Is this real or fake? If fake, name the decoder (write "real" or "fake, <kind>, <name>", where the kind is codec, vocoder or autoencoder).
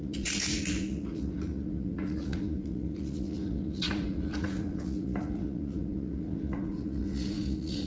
fake, vocoder, Vocos